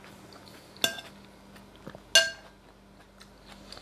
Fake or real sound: real